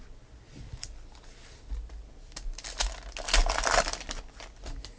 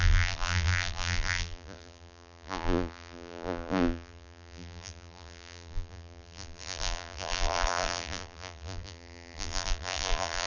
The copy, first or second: second